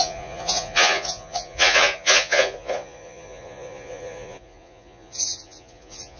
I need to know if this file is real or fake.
fake